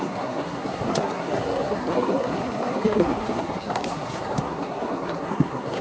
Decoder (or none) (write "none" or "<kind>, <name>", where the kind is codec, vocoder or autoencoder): codec, SNAC